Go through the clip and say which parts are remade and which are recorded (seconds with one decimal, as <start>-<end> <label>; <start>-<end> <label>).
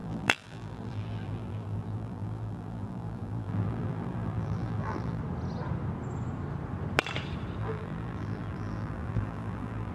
0.0-5.2 remade; 5.2-7.6 recorded; 7.6-9.9 remade